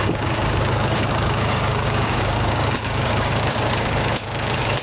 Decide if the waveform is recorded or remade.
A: remade